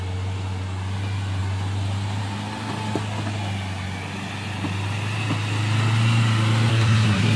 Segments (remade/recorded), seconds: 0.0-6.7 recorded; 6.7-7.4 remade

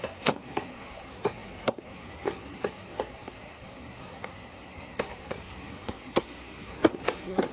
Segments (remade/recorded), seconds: 0.0-7.5 remade

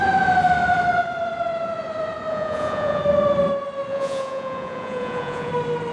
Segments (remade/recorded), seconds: 0.0-2.3 recorded; 2.3-3.0 remade; 3.0-3.9 recorded; 3.9-5.5 remade; 5.5-5.9 recorded

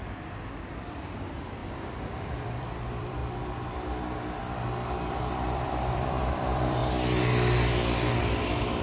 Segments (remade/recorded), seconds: 0.0-0.8 recorded; 0.8-3.2 remade; 3.2-5.2 recorded; 5.2-6.8 remade; 6.8-8.2 recorded; 8.2-8.8 remade

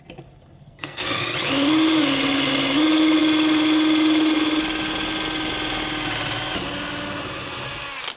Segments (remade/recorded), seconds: 0.0-0.6 recorded; 0.6-1.2 remade; 1.2-8.2 recorded